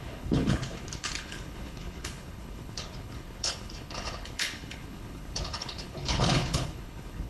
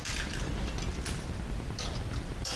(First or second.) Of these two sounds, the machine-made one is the first